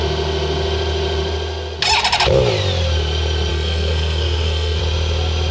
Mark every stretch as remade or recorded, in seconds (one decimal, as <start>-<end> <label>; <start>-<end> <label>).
0.0-3.5 recorded; 3.5-4.8 remade; 4.8-5.5 recorded